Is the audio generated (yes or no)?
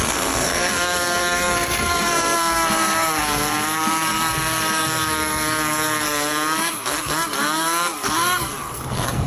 yes